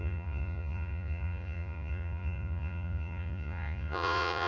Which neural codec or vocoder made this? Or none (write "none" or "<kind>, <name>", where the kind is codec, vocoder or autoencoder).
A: vocoder, Vocos